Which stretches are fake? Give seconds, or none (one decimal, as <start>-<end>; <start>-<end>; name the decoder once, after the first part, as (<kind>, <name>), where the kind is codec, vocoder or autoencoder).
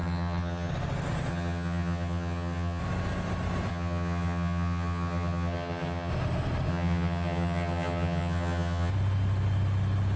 0.0-0.7 (vocoder, HiFi-GAN); 1.3-2.8; 3.7-6.1; 6.7-8.9